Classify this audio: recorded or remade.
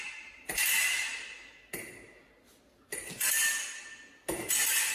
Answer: recorded